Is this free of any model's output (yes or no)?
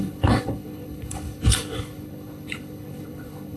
no